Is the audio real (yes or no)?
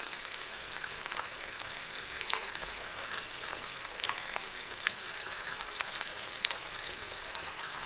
no